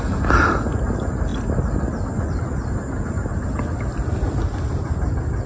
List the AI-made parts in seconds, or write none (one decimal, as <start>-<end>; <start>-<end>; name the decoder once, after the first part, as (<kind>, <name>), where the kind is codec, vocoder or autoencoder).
none